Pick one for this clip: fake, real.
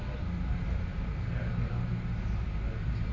real